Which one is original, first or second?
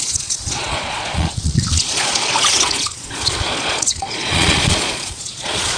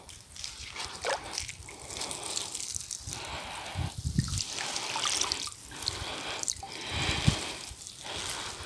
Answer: second